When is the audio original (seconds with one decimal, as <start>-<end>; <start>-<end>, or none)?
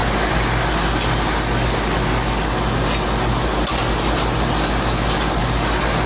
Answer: 0.0-6.1